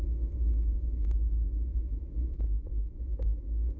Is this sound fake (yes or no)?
yes